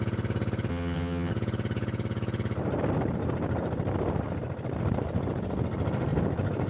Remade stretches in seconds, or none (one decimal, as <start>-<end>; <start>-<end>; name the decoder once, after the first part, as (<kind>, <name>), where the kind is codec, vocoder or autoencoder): 0.7-1.3 (vocoder, HiFi-GAN)